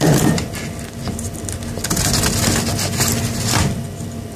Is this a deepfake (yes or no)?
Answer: no